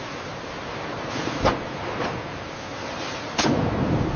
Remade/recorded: recorded